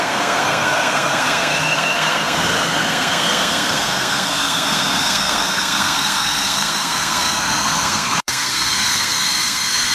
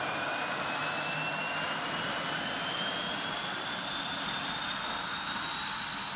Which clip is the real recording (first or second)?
second